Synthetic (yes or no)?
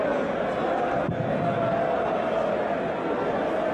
no